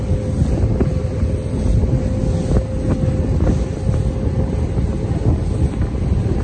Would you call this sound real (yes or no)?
yes